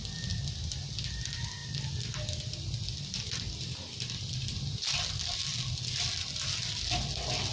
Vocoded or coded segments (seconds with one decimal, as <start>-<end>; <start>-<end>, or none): none